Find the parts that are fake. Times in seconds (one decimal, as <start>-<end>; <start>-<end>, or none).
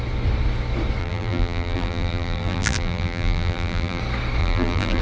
1.0-4.0; 4.4-5.0